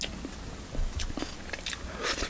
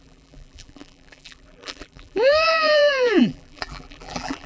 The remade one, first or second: second